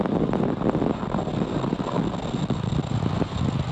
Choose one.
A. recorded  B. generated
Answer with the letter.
A